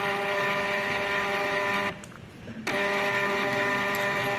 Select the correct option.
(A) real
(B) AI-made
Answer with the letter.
B